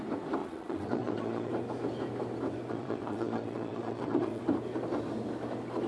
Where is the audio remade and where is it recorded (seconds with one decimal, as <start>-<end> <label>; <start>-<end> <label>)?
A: 0.0-0.4 recorded; 0.4-1.5 remade; 1.5-2.7 recorded; 2.7-4.4 remade; 4.4-5.9 recorded